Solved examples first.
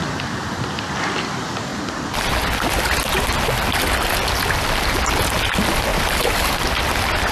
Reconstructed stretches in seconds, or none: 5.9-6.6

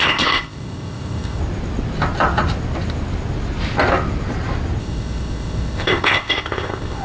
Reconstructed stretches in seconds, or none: 0.0-1.4; 4.8-7.0

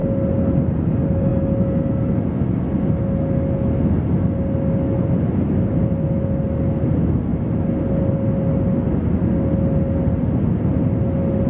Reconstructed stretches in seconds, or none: none